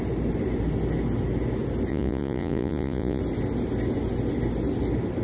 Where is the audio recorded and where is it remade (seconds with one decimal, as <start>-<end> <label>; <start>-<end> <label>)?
0.0-1.9 recorded; 1.9-3.2 remade; 3.2-5.2 recorded